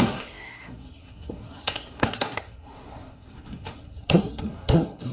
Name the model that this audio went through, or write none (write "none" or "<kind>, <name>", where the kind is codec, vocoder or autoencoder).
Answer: codec, SNAC